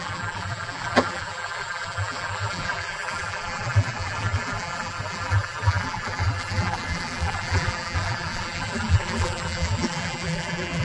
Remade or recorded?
remade